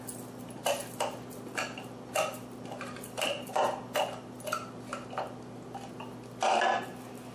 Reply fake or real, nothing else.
real